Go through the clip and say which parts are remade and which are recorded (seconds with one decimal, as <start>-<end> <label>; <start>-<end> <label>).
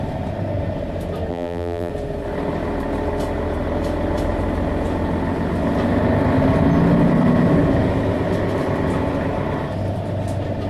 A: 0.0-1.3 recorded; 1.3-1.9 remade; 1.9-10.7 recorded